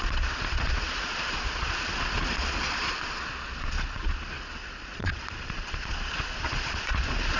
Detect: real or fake fake